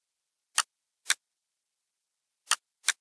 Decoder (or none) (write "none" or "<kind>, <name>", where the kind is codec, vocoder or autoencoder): none